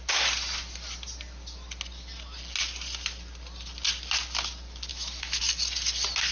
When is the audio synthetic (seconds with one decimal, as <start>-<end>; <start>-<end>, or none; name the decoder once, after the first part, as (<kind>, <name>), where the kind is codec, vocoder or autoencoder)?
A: 4.9-5.4 (autoencoder, DAC-VAE)